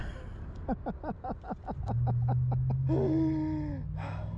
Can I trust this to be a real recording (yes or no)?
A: yes